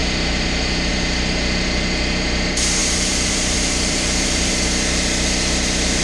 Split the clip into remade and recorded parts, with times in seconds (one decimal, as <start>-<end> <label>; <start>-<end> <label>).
0.0-2.8 recorded; 2.8-4.5 remade; 4.5-6.0 recorded